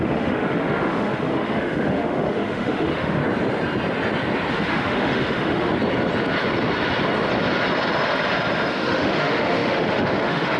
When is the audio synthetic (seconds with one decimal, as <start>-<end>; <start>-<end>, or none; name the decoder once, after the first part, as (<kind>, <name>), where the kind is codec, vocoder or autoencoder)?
0.0-3.2 (autoencoder, DAC-VAE); 4.5-5.7; 8.7-10.6